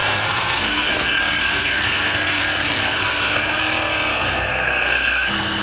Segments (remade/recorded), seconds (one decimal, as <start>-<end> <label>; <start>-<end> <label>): 0.0-0.9 remade; 0.9-1.4 recorded; 1.4-2.4 remade; 2.4-2.8 recorded; 2.8-3.6 remade; 3.6-4.1 recorded; 4.1-5.6 remade